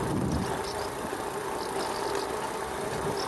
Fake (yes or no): no